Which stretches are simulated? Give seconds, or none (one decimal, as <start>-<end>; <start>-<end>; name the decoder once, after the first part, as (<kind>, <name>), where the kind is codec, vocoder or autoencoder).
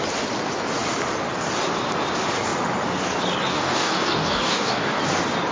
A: 3.5-5.0 (codec, DAC)